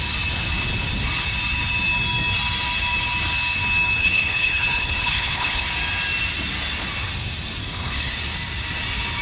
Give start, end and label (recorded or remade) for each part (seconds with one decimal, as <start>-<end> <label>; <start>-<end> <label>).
0.0-4.0 recorded; 4.0-5.7 remade; 5.7-7.6 recorded; 7.6-8.1 remade; 8.1-9.2 recorded